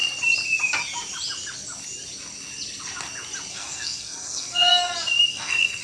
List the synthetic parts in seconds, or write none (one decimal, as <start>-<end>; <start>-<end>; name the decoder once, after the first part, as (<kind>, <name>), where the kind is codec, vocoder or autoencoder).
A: 3.5-4.7 (codec, SNAC); 5.3-5.8